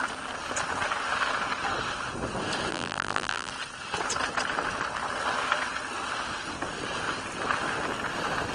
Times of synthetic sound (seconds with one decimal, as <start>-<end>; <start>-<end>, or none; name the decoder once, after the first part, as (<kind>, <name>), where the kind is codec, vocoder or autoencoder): 2.7-3.5 (vocoder, BigVGAN v2)